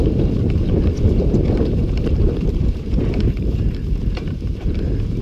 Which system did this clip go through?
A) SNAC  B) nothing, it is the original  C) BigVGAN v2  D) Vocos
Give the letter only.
C